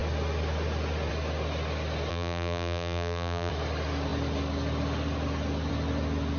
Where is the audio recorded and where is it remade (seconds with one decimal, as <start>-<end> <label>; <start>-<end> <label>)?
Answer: 0.0-2.1 recorded; 2.1-3.5 remade; 3.5-6.4 recorded